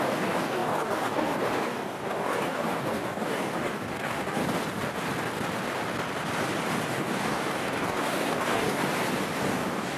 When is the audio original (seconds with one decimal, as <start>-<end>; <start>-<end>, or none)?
4.4-6.9; 8.8-9.4